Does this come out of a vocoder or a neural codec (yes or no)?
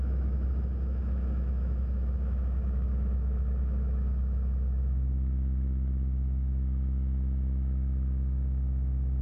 yes